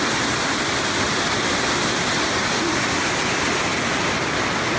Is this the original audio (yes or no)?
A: yes